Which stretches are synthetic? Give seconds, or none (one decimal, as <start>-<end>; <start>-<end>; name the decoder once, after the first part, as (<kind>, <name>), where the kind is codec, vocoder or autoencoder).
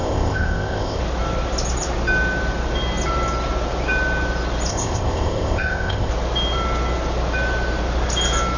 0.0-1.0 (codec, ZipCodec); 4.7-6.1